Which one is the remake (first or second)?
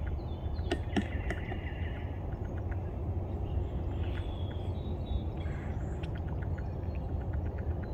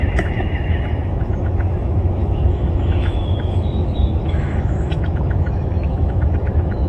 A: second